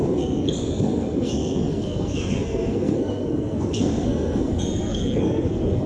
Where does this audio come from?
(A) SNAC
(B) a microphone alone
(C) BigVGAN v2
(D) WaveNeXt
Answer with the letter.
A